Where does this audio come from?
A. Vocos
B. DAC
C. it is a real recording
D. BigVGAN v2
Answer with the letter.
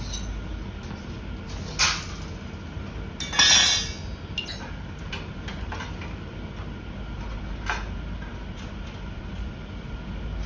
C